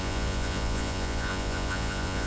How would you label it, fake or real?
fake